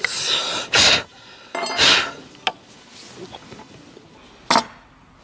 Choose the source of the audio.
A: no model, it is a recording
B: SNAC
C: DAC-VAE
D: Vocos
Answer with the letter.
A